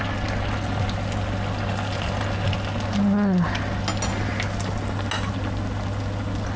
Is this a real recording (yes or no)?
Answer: yes